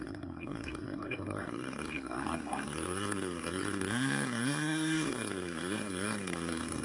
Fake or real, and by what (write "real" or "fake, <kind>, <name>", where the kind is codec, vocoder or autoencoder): fake, codec, SNAC